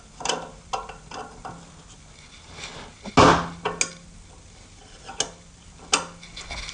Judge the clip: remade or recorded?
recorded